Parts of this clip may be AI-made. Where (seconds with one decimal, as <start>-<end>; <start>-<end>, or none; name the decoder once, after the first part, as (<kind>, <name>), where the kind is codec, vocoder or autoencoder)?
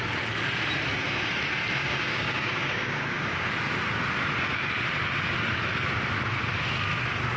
1.8-3.5 (codec, DAC)